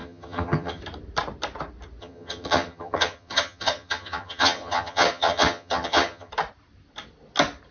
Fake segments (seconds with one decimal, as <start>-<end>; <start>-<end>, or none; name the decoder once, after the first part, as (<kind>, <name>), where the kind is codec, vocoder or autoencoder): 0.0-0.8 (vocoder, HiFi-GAN); 2.0-6.3